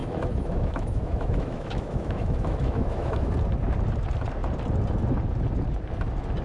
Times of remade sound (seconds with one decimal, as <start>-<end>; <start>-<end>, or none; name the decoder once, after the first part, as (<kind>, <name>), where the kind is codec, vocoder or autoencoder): 0.0-3.3 (autoencoder, DAC-VAE)